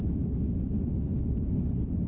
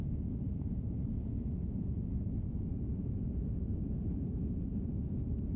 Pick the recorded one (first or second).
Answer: first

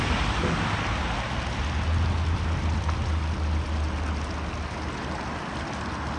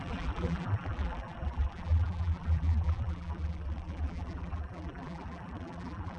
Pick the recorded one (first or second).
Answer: first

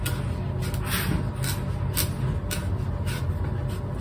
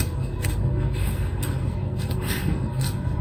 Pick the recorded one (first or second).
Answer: first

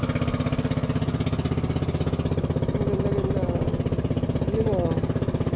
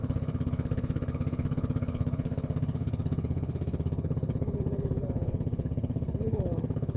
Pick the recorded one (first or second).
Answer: first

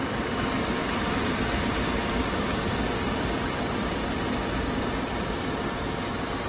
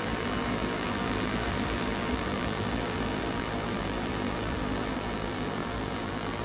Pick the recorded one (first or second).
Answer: first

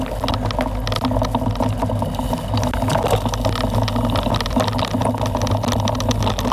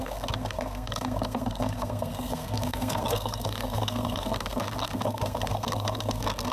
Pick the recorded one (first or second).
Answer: first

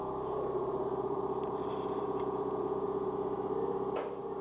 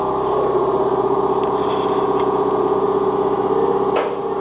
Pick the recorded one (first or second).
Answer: second